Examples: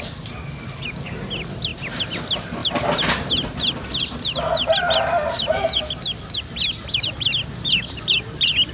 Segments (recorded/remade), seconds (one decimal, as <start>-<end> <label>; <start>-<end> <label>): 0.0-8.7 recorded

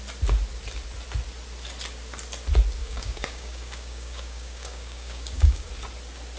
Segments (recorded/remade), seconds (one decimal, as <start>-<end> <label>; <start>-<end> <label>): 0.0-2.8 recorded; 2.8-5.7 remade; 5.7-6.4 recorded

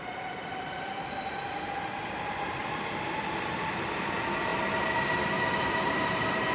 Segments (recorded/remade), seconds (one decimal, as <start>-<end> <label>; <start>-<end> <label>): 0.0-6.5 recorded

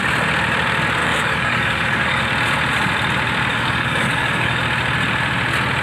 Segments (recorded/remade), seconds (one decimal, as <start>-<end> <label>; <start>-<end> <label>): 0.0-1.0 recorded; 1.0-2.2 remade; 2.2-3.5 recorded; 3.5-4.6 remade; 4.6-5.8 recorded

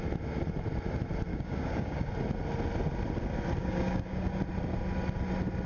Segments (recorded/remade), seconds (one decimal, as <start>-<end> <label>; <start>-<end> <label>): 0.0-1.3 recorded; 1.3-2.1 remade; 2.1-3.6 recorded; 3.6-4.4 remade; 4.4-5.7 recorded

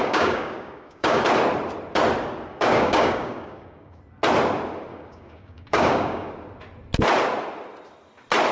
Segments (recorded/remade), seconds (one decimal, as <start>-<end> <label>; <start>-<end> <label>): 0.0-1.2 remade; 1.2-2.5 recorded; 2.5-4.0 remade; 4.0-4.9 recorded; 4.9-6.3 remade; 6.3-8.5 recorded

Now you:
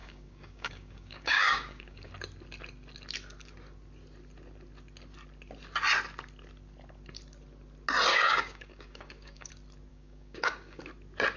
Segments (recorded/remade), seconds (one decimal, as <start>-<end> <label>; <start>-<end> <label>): 0.0-2.1 remade; 2.1-8.1 recorded; 8.1-9.5 remade; 9.5-9.9 recorded; 9.9-10.8 remade; 10.8-11.4 recorded